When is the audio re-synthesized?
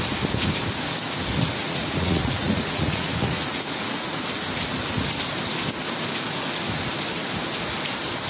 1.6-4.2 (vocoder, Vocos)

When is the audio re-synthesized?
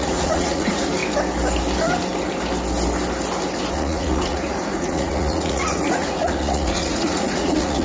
0.0-1.0 (vocoder, Vocos); 3.7-7.8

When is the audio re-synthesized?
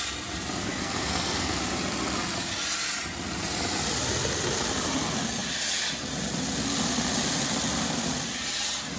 0.7-1.6 (codec, SNAC)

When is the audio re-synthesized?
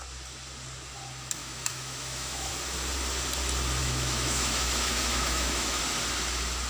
1.4-2.5 (autoencoder, DAC-VAE); 3.8-5.8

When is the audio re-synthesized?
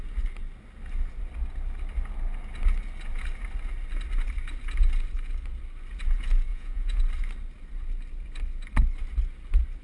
6.5-7.0 (vocoder, Vocos)